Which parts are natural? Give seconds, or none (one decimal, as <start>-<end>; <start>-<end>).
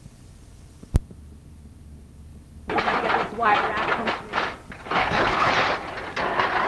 0.0-5.0; 5.5-6.7